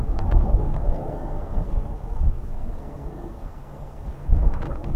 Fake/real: fake